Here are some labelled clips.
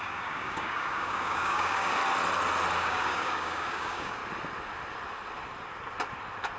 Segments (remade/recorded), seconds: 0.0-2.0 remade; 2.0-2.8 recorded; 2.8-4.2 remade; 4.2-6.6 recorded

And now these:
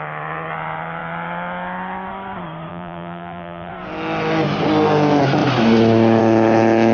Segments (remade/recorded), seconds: 0.0-2.7 recorded; 2.7-3.7 remade; 3.7-6.9 recorded